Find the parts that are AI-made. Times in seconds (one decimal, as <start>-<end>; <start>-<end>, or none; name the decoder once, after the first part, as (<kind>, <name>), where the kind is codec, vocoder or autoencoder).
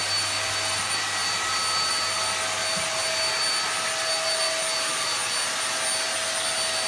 none